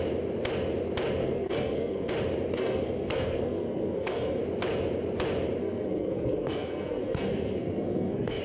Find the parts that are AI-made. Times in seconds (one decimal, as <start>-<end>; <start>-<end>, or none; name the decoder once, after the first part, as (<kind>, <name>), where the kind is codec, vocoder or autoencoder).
1.2-2.1 (codec, SNAC); 2.6-4.4; 5.6-8.4